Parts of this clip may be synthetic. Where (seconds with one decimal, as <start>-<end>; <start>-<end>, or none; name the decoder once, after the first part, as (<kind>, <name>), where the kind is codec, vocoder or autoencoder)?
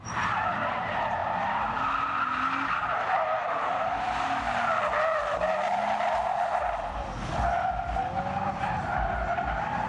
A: none